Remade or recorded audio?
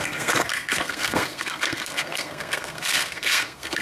remade